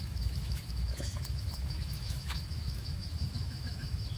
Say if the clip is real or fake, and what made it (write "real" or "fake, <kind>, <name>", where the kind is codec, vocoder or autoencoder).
fake, autoencoder, DAC-VAE